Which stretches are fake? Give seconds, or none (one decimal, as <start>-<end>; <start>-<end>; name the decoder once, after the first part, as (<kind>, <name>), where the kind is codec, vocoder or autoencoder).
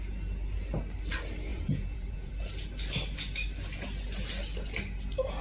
1.5-2.3 (vocoder, Vocos)